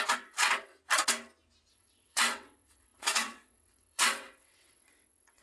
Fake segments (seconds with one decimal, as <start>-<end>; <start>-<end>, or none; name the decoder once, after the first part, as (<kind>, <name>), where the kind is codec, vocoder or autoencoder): 0.0-0.7 (vocoder, WaveNeXt); 1.7-5.4